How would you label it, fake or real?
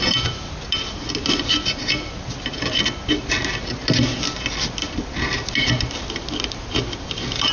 real